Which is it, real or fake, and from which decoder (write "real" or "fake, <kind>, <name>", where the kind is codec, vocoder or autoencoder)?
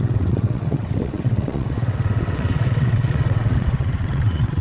fake, vocoder, WaveNeXt